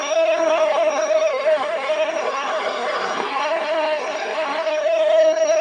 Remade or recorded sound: remade